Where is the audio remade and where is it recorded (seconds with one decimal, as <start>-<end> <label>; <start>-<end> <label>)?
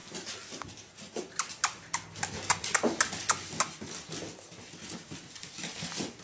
0.0-6.2 recorded